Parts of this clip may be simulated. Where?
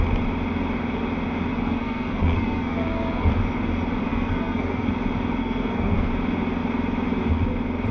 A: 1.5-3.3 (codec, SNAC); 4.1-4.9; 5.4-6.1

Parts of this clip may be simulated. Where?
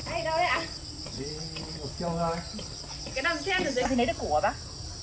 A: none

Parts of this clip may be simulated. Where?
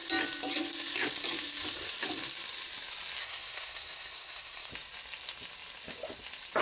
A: 3.2-4.7 (codec, SNAC)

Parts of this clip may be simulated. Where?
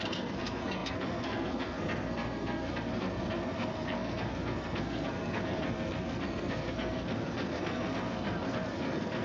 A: 0.0-9.2 (codec, SNAC)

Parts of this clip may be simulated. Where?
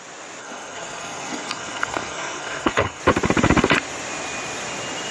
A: 0.4-3.0 (codec, SNAC)